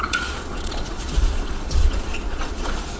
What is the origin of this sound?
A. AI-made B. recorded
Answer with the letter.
A